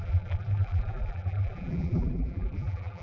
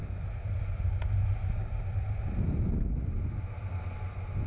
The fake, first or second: first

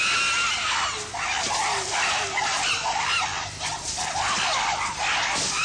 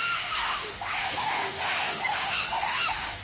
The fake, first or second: second